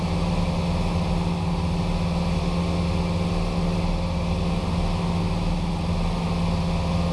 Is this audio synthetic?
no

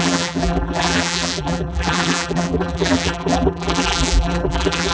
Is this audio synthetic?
yes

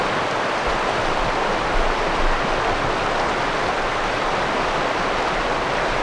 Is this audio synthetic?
no